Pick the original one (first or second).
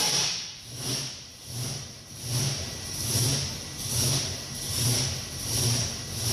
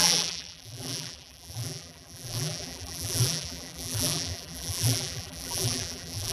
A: first